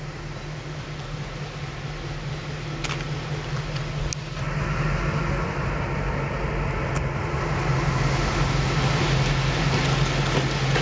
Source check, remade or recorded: recorded